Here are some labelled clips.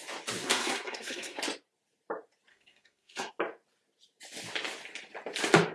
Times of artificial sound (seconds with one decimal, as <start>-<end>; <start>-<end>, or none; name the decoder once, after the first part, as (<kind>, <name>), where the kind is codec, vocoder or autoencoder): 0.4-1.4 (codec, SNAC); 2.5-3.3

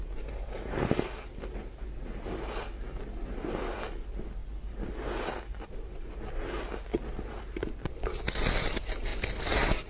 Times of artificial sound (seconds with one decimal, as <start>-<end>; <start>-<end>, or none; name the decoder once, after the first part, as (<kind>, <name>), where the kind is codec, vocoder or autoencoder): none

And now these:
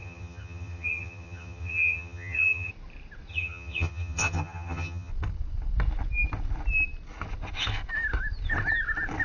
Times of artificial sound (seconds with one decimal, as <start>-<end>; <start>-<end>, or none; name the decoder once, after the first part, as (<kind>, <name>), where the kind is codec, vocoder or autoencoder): 0.0-2.7 (vocoder, HiFi-GAN); 3.3-5.1

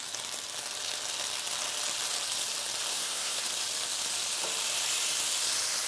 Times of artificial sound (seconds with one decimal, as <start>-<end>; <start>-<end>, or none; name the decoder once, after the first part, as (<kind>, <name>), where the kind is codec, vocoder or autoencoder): 2.9-3.4 (codec, SNAC)